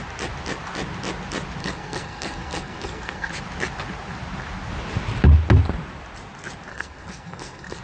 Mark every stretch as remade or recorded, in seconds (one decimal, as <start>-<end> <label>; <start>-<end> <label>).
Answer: 0.0-1.6 recorded; 1.6-3.3 remade; 3.3-6.7 recorded; 6.7-7.8 remade